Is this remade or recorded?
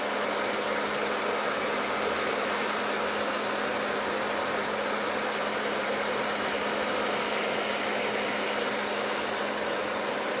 recorded